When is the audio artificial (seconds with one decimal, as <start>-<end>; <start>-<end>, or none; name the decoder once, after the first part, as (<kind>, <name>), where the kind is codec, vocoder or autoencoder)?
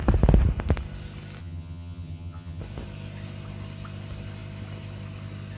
1.4-2.6 (vocoder, HiFi-GAN)